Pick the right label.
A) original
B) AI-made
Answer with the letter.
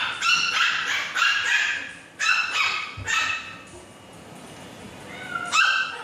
A